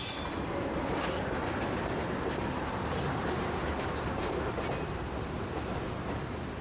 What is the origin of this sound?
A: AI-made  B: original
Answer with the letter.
A